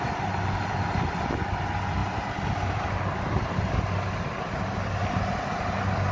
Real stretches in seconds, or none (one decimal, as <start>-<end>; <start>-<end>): 0.0-6.1